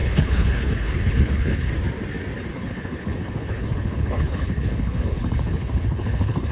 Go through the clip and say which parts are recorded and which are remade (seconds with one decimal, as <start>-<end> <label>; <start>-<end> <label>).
0.0-1.7 remade; 1.7-2.5 recorded; 2.5-6.5 remade